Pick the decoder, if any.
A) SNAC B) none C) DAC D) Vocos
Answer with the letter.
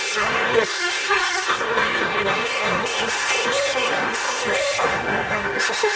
A